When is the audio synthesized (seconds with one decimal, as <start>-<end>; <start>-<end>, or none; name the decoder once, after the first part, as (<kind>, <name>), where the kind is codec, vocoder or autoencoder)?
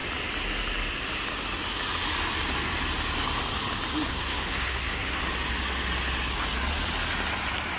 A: 4.1-5.2 (codec, SNAC)